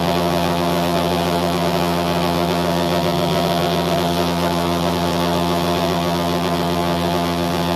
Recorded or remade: remade